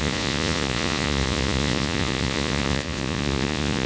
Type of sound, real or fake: fake